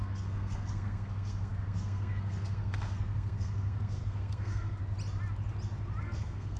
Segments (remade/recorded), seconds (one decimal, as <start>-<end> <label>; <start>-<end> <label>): 0.0-4.8 remade; 4.8-6.0 recorded; 6.0-6.6 remade